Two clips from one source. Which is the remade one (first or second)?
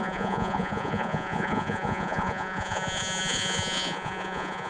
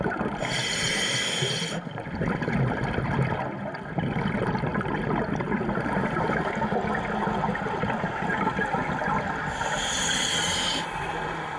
first